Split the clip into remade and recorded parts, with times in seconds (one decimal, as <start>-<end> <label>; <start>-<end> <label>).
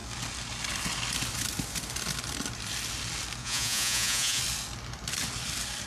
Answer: 0.0-3.4 recorded; 3.4-4.4 remade; 4.4-5.9 recorded